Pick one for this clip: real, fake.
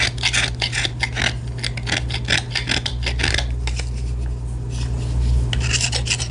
real